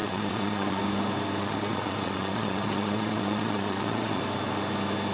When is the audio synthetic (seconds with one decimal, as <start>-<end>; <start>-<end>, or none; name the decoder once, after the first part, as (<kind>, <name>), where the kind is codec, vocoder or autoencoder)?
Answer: 0.0-0.8 (vocoder, Vocos); 1.4-4.2